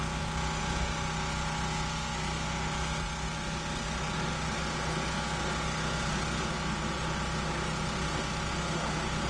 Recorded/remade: recorded